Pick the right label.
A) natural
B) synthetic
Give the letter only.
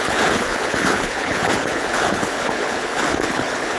B